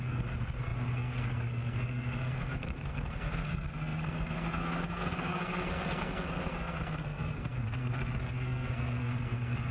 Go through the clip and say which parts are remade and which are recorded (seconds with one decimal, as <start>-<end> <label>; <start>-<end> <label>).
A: 0.0-9.7 remade